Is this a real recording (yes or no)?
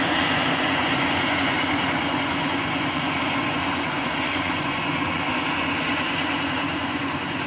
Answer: no